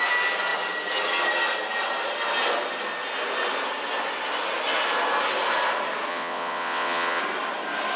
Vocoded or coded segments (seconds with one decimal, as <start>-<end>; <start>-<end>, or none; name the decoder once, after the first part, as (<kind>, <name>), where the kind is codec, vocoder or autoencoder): 6.1-7.2 (vocoder, WaveNeXt)